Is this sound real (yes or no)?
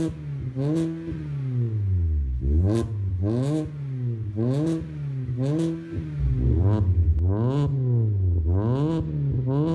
yes